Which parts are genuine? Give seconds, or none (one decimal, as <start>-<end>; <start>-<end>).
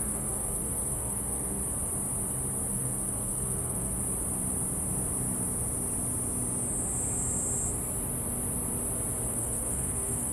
1.6-2.7; 4.0-9.3